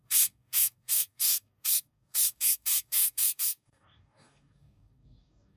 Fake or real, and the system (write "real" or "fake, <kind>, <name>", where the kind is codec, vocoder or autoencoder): fake, codec, DAC